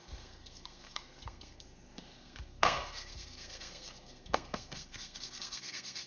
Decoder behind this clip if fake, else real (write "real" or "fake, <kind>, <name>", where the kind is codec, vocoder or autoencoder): fake, codec, SNAC